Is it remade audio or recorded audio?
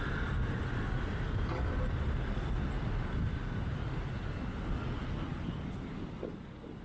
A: recorded